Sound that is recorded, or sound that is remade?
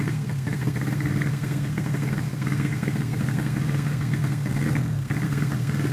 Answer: remade